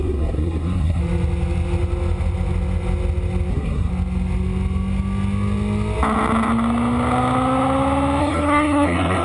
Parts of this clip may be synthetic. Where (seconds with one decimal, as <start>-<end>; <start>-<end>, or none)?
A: 0.0-1.0; 3.5-3.9; 8.2-9.2